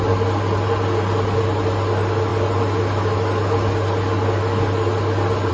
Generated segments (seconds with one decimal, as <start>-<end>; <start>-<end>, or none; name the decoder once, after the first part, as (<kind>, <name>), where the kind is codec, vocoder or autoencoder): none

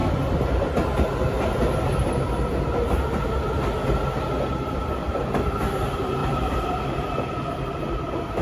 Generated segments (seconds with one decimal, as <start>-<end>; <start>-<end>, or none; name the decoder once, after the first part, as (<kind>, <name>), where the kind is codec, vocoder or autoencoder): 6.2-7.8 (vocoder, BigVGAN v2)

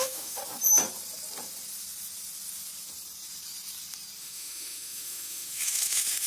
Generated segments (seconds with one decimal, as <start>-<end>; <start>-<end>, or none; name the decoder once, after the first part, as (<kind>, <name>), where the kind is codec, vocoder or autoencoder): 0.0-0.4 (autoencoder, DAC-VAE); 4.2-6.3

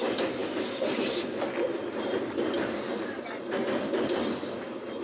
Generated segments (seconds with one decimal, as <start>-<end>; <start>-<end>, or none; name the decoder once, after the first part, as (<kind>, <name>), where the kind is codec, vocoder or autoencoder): none

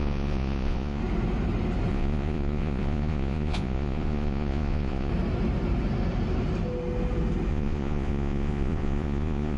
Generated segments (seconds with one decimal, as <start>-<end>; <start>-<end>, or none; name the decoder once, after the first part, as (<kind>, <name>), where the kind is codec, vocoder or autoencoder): 0.0-1.0 (vocoder, Vocos); 1.9-5.1; 7.5-9.6

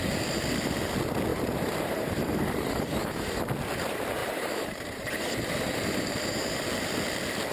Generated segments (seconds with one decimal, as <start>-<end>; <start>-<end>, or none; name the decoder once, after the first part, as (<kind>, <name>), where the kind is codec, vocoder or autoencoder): 1.3-3.5 (vocoder, BigVGAN v2); 4.2-6.2